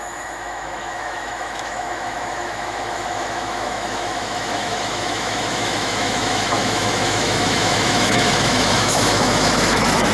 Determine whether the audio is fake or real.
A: fake